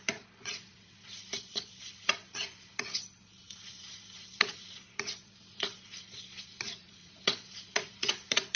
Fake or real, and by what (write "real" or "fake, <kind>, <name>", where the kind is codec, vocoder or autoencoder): fake, vocoder, Vocos